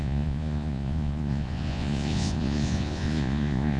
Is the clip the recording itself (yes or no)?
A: no